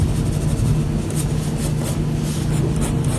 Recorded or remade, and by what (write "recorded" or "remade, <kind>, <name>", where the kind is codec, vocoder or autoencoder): recorded